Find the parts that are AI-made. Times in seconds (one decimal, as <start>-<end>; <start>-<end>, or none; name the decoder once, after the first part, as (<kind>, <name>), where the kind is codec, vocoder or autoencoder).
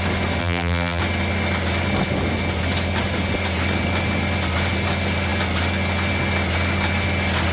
0.4-1.0 (vocoder, BigVGAN v2)